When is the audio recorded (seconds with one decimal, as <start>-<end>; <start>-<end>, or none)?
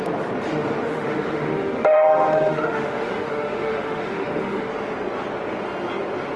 0.0-0.9; 4.7-6.4